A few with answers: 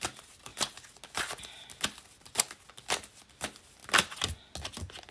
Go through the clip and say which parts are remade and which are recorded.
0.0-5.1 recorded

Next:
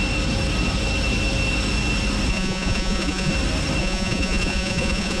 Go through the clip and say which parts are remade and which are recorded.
0.0-2.3 recorded; 2.3-3.3 remade; 3.3-3.8 recorded; 3.8-5.2 remade